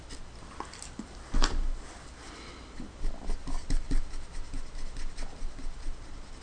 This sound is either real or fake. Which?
real